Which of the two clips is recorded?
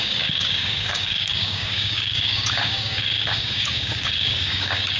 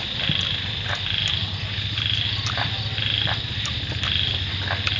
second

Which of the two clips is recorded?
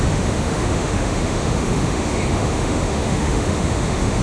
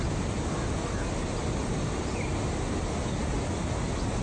second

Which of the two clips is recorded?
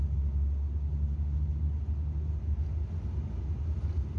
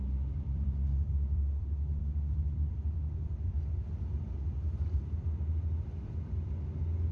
first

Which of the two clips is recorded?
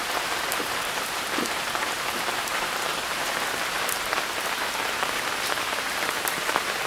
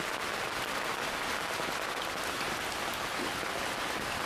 second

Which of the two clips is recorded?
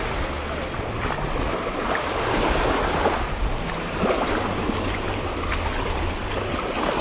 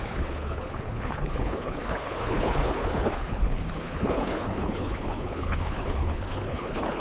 first